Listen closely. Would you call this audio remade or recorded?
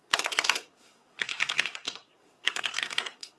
remade